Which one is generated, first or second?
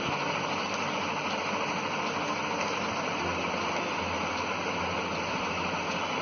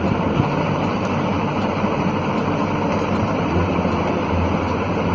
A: second